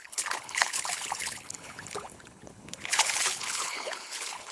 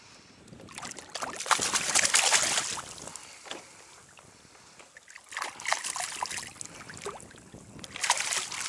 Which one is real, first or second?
second